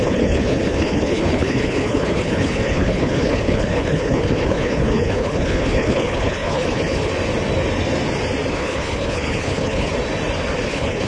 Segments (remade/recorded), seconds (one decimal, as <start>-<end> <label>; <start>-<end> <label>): 0.0-7.1 remade; 7.1-8.5 recorded; 8.5-9.9 remade; 9.9-10.7 recorded; 10.7-11.1 remade